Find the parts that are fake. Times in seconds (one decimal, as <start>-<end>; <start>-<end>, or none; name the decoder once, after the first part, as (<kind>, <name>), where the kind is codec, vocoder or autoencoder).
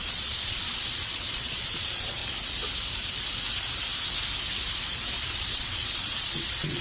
0.0-2.2 (vocoder, Vocos); 4.7-6.8